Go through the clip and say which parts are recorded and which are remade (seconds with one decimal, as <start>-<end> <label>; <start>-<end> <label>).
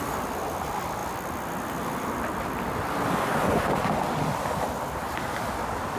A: 0.0-6.0 recorded